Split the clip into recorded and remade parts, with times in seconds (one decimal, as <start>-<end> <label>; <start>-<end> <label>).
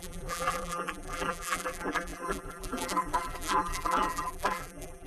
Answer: 0.0-5.1 remade